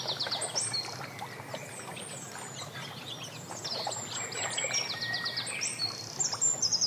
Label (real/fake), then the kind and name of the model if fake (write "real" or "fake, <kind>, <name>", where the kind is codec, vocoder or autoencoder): real